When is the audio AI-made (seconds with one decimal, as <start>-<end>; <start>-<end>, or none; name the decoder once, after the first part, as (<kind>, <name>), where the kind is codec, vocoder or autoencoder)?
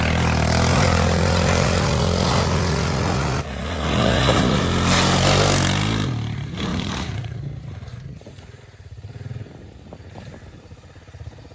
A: 0.7-4.6 (vocoder, Vocos); 6.7-7.4; 7.9-8.6